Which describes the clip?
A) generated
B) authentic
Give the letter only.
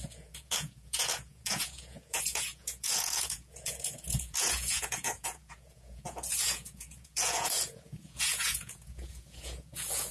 A